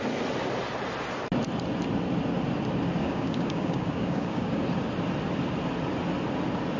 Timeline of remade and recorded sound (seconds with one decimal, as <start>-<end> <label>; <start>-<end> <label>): 0.0-3.0 recorded; 3.0-4.6 remade; 4.6-6.8 recorded